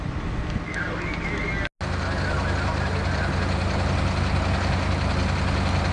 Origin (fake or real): real